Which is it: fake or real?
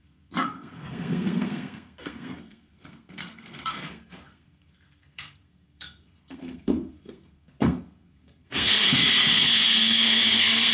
fake